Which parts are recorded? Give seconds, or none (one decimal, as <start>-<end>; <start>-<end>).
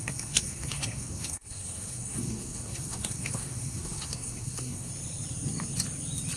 4.9-6.4